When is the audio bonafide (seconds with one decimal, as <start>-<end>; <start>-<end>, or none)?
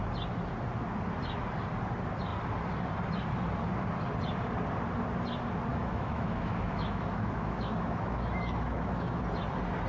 0.0-5.7; 9.2-9.9